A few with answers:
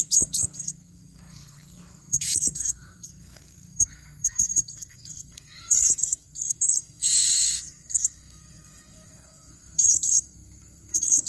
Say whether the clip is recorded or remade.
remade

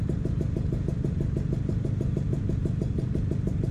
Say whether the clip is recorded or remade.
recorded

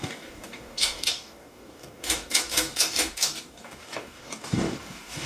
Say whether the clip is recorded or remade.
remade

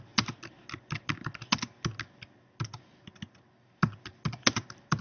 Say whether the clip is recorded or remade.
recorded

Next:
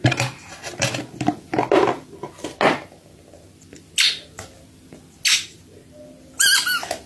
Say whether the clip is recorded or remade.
recorded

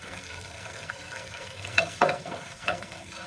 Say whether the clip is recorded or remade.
remade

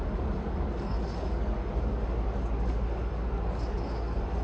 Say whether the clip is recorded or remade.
remade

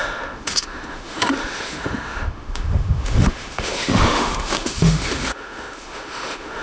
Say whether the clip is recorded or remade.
remade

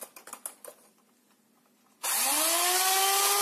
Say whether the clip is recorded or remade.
recorded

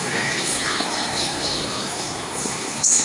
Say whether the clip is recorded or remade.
remade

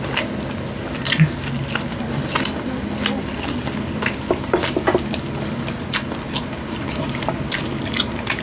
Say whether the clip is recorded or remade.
recorded